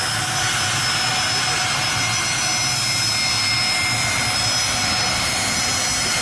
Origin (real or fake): real